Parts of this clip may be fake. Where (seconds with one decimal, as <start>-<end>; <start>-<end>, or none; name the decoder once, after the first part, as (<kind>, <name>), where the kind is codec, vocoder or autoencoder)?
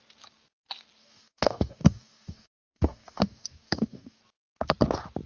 1.0-4.2 (codec, DAC)